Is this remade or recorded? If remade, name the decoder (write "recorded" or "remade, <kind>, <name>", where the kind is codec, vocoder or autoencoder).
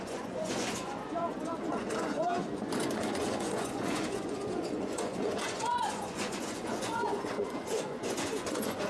remade, vocoder, Vocos